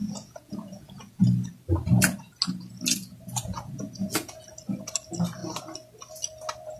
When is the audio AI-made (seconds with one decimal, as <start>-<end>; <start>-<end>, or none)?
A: 0.0-1.2; 3.4-4.4